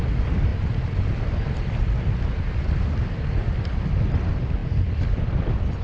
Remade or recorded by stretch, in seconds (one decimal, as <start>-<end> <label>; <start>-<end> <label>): 0.0-5.8 recorded